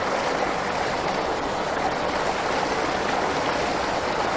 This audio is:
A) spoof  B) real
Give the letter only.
B